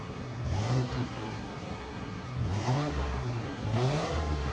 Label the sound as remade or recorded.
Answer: remade